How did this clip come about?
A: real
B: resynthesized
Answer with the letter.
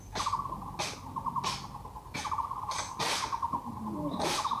A